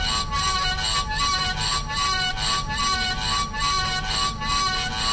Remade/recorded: recorded